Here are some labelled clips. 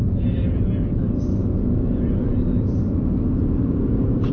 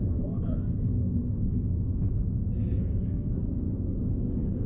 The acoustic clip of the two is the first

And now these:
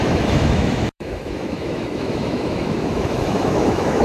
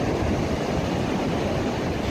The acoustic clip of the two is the second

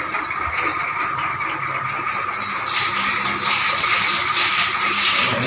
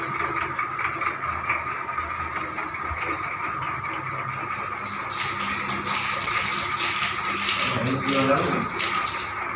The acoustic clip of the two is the second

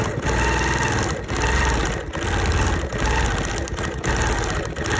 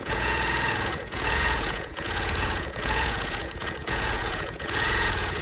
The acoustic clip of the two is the first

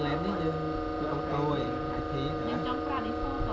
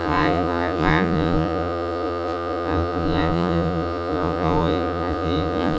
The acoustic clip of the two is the first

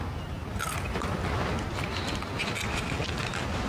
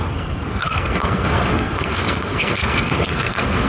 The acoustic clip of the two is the first